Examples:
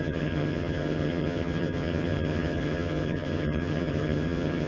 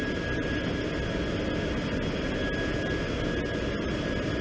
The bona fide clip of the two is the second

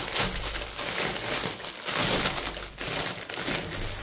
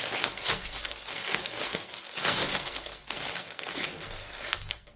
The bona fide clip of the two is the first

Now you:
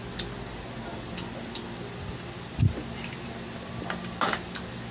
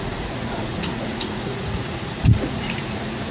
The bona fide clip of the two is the first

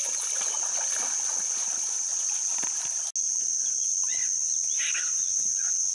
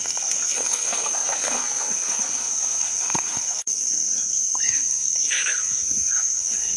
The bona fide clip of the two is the first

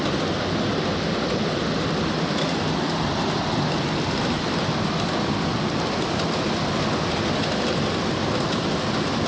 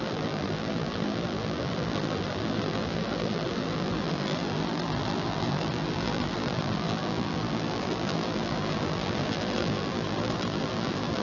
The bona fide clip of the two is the first